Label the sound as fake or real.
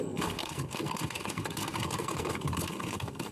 fake